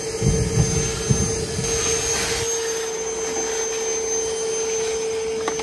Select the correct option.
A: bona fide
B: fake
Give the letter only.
A